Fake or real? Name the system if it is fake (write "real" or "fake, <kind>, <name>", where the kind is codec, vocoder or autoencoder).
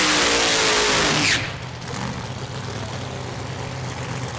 real